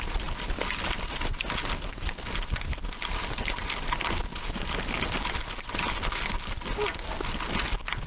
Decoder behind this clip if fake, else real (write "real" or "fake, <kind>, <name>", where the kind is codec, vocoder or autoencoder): real